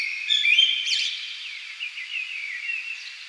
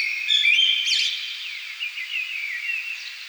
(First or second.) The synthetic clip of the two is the first